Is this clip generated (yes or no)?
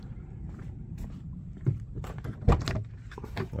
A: yes